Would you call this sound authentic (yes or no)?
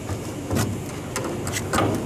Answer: yes